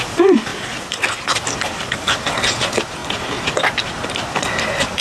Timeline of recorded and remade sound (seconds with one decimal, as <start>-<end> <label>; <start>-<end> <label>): 0.0-5.0 recorded